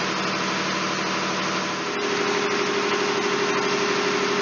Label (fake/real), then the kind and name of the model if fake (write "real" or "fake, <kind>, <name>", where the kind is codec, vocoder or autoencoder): real